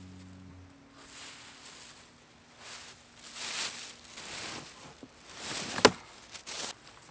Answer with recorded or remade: recorded